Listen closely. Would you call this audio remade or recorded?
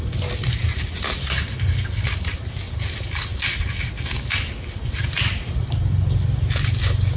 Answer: recorded